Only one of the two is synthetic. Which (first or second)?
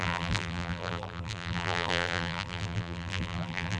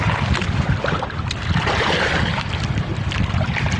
first